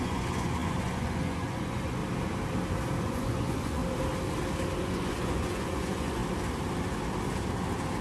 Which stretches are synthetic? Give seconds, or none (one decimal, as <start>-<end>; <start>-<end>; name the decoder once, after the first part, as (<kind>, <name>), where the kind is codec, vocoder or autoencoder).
0.0-2.0 (vocoder, Vocos); 3.0-3.8; 4.8-6.2